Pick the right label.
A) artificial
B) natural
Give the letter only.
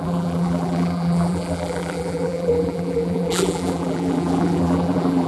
A